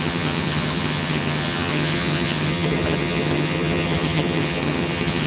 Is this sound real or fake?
fake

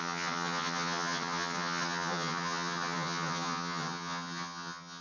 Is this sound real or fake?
fake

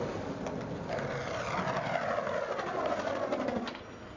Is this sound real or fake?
real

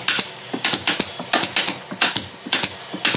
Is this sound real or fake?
real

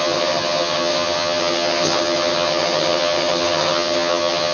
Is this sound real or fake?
fake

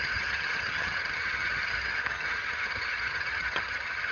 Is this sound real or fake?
fake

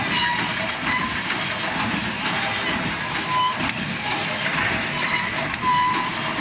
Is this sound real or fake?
real